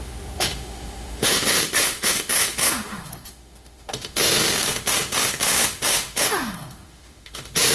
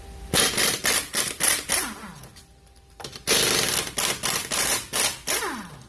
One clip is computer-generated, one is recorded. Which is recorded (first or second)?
second